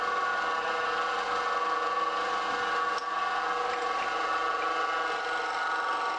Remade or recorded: recorded